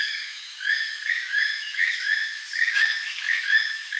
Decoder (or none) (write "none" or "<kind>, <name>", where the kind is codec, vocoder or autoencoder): autoencoder, DAC-VAE